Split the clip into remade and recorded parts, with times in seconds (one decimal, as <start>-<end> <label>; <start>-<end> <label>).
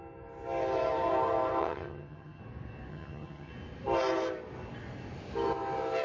0.0-1.6 recorded; 1.6-2.4 remade; 2.4-2.9 recorded; 2.9-3.5 remade; 3.5-6.0 recorded